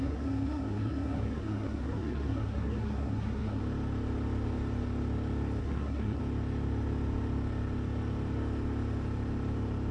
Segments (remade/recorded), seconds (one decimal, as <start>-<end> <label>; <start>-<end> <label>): 0.0-3.6 remade; 3.6-5.6 recorded; 5.6-6.2 remade; 6.2-9.9 recorded